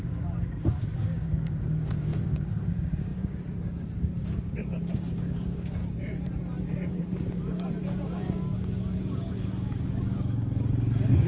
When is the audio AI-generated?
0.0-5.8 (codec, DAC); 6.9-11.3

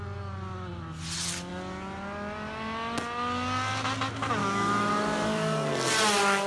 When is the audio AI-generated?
4.4-4.9 (autoencoder, DAC-VAE)

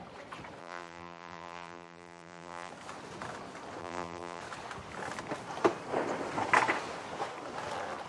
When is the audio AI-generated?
0.6-2.7 (vocoder, BigVGAN v2); 3.8-4.4

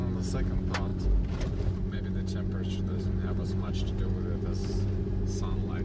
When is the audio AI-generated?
0.9-2.0 (vocoder, BigVGAN v2); 2.9-3.9; 4.6-5.3

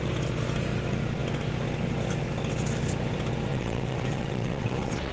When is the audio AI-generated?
3.5-5.1 (vocoder, WaveNeXt)

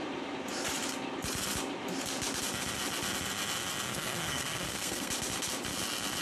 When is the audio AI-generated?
3.9-5.1 (codec, SNAC)

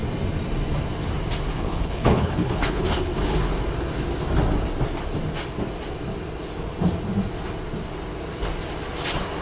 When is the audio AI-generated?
1.5-3.0 (codec, HILCodec)

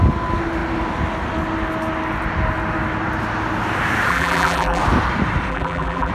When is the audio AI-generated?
4.1-4.8 (vocoder, BigVGAN v2); 5.5-6.1